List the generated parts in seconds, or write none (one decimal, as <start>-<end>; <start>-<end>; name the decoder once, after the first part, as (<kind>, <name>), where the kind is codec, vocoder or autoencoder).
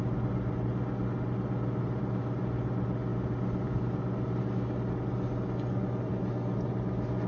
none